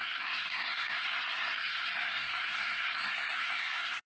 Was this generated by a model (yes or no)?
yes